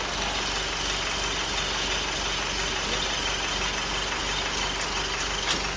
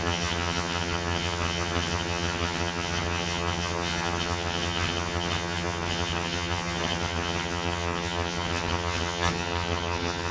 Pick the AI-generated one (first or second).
second